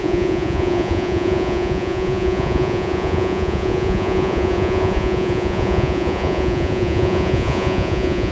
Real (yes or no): no